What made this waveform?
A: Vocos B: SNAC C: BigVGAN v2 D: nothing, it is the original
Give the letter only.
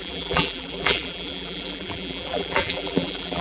C